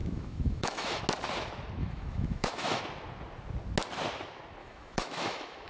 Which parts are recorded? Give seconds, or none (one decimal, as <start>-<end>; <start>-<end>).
1.0-1.8; 2.8-4.6